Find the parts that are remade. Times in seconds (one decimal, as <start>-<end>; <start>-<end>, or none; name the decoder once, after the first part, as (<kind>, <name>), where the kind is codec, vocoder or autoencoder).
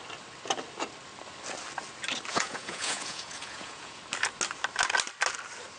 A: 2.3-4.0 (vocoder, Vocos)